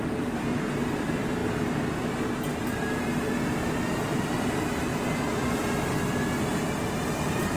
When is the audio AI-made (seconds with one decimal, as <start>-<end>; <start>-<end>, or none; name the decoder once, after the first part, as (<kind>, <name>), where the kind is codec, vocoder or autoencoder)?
none